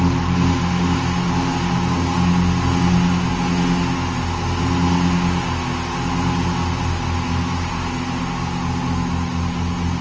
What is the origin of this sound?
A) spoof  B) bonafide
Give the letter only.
B